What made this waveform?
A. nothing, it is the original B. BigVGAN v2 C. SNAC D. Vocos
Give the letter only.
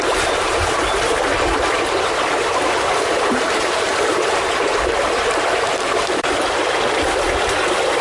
A